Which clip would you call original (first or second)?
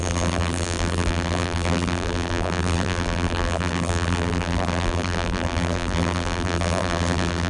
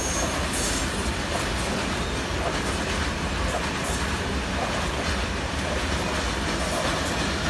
second